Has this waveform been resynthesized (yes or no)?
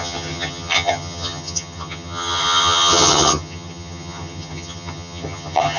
yes